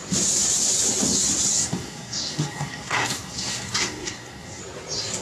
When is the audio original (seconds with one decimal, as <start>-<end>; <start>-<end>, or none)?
0.0-1.5; 4.6-5.2